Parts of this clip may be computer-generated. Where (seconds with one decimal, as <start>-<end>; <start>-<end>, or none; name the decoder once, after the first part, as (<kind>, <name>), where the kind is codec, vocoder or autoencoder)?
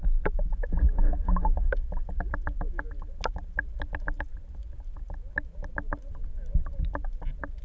none